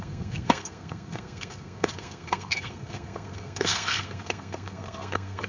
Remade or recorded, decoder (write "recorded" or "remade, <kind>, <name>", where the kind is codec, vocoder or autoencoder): remade, codec, SNAC